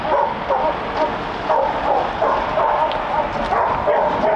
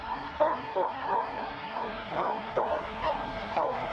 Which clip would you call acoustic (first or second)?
first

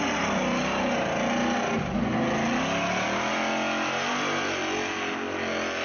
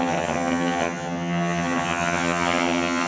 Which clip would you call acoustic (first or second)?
first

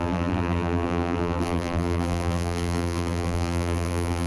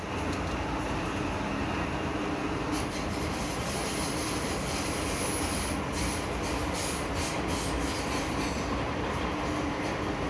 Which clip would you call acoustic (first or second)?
second